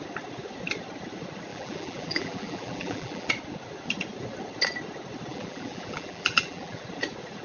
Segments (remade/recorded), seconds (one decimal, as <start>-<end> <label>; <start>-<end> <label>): 0.0-1.5 recorded; 1.5-3.3 remade; 3.3-5.3 recorded; 5.3-6.8 remade; 6.8-7.4 recorded